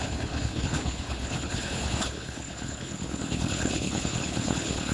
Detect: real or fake fake